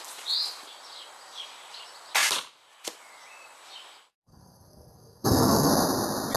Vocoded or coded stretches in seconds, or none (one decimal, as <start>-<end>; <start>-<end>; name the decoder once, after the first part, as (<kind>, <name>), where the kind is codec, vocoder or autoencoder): 4.1-5.7 (codec, SNAC)